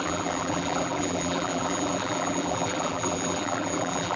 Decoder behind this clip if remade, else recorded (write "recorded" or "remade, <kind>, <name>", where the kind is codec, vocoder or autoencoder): remade, vocoder, BigVGAN v2